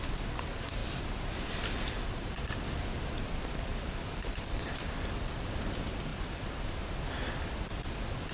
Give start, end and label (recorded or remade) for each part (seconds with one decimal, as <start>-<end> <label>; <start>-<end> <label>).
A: 0.0-0.8 recorded; 0.8-4.7 remade; 4.7-6.1 recorded; 6.1-6.8 remade; 6.8-8.3 recorded